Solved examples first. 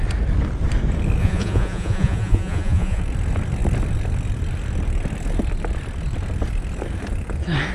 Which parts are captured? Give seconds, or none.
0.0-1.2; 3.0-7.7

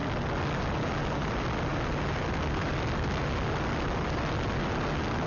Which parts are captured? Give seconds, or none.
0.0-5.3